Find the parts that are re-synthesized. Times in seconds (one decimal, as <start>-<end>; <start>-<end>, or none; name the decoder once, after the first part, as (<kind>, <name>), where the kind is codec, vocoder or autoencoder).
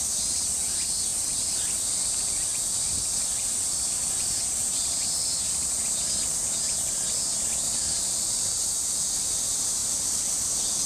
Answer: none